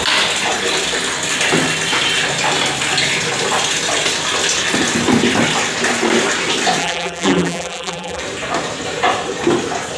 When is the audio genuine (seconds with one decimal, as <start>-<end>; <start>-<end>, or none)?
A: 0.0-6.8; 8.2-10.0